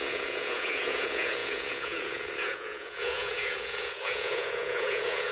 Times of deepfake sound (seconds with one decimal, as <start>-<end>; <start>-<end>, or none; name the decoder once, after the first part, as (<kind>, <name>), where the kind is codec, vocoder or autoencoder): 0.0-5.3 (vocoder, Vocos)